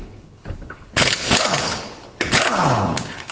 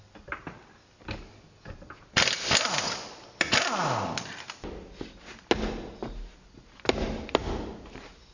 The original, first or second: second